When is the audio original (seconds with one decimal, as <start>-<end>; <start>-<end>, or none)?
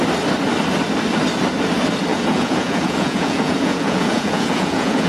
0.0-2.1